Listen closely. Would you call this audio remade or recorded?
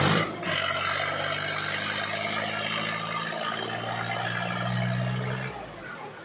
recorded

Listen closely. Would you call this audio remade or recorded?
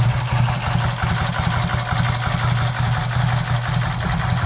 recorded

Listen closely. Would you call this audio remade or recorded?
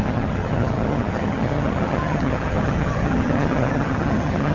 remade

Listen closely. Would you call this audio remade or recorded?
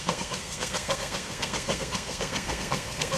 remade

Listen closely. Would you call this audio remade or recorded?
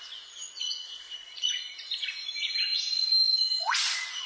remade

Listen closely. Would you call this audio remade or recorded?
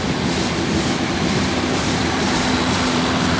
remade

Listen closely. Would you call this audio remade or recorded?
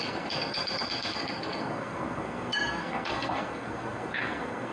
remade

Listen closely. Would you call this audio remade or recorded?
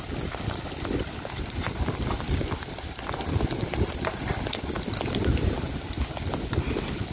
recorded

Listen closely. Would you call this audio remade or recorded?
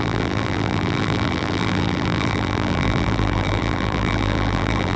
remade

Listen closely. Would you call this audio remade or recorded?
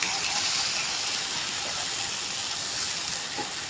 recorded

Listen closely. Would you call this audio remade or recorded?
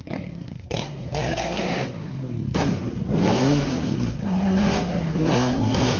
remade